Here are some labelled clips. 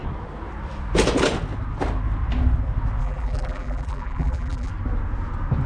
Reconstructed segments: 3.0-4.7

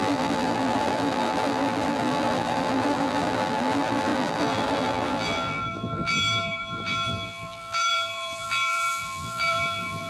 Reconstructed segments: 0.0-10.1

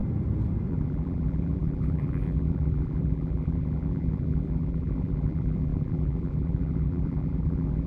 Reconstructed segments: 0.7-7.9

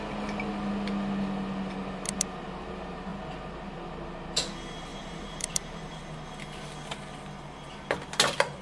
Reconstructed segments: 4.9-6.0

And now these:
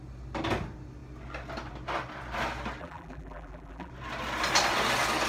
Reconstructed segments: 2.8-3.9

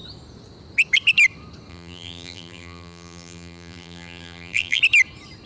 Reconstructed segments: 1.7-4.8

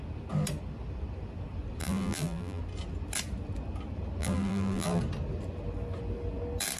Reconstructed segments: 1.8-2.6; 4.2-5.0

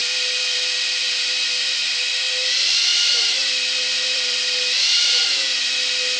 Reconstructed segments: 0.0-2.0; 2.9-5.2